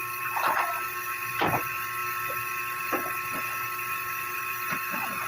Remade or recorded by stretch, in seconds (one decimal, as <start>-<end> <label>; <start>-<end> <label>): 0.0-5.3 recorded